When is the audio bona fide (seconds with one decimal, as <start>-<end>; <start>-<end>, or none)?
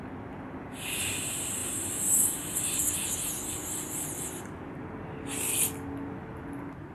0.0-6.9